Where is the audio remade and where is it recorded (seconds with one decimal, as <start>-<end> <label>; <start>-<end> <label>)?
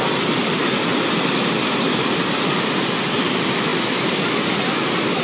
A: 0.0-5.2 recorded